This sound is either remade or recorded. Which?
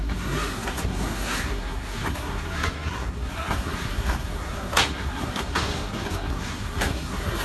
remade